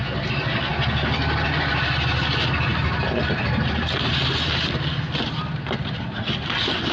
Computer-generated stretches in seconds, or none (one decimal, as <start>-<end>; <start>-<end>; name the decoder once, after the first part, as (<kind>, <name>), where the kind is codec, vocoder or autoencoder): 0.7-1.7 (vocoder, BigVGAN v2)